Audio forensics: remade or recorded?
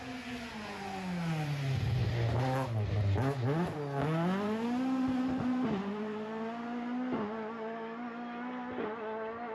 recorded